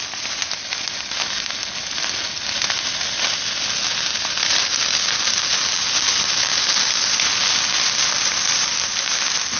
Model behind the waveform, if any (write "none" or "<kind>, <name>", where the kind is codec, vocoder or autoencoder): none